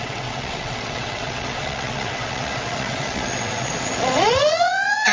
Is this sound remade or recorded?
remade